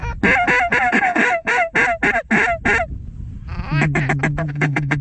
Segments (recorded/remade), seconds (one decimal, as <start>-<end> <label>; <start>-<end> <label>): 0.0-0.9 recorded; 0.9-1.7 remade; 1.7-4.5 recorded; 4.5-5.0 remade